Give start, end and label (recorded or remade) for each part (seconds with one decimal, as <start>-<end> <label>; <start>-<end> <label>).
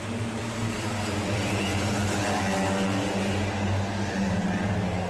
0.0-0.4 recorded; 0.4-2.2 remade; 2.2-5.1 recorded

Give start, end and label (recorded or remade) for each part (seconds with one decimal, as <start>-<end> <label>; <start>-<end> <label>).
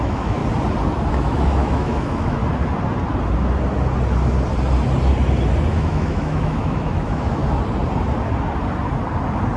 0.0-0.4 remade; 0.4-1.1 recorded; 1.1-2.4 remade; 2.4-5.7 recorded; 5.7-7.4 remade; 7.4-9.6 recorded